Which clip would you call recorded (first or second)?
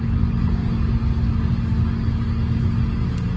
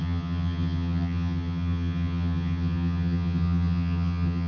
first